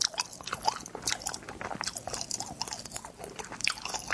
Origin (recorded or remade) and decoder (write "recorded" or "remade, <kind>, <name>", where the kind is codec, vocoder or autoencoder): recorded